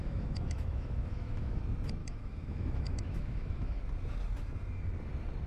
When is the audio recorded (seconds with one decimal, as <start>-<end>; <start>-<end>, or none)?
1.6-2.0; 3.8-5.5